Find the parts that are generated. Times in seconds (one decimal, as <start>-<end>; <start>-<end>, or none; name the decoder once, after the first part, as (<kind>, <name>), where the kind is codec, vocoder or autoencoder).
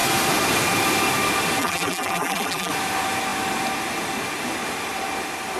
1.6-2.7 (vocoder, BigVGAN v2)